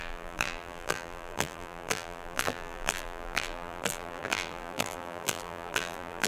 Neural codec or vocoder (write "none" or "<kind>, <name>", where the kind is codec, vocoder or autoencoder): vocoder, BigVGAN v2